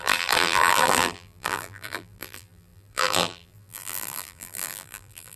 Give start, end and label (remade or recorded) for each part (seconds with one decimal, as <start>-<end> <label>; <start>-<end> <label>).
0.0-5.4 remade